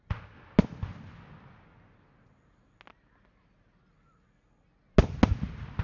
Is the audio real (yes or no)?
yes